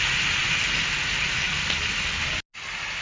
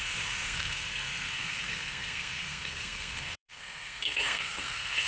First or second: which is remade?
second